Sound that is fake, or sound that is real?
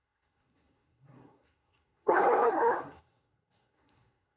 fake